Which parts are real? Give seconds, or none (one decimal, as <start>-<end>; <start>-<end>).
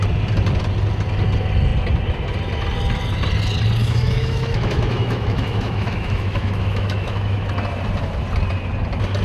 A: 0.0-3.8; 7.5-9.2